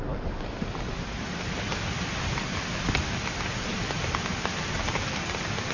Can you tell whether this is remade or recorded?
recorded